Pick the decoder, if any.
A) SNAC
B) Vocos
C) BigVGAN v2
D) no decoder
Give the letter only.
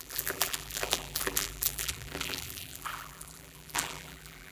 C